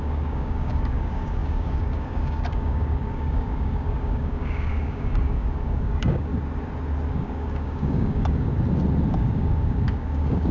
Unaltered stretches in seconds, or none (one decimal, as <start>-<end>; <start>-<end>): 6.3-7.1; 8.5-9.1